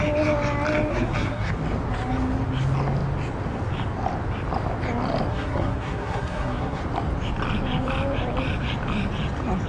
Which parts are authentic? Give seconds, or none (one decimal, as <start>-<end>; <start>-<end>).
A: 0.0-0.9; 1.5-5.3; 6.8-9.7